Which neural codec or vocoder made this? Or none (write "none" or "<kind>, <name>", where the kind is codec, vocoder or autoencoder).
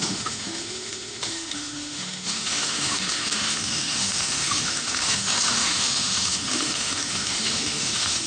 autoencoder, DAC-VAE